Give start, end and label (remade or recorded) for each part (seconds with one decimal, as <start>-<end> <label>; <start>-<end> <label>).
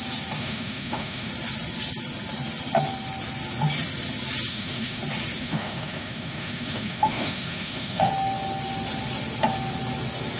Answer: 0.0-0.4 recorded; 0.4-1.3 remade; 1.3-4.5 recorded; 4.5-5.0 remade; 5.0-5.4 recorded; 5.4-8.1 remade; 8.1-10.4 recorded